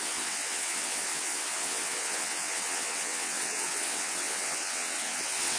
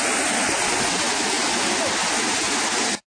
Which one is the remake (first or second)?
first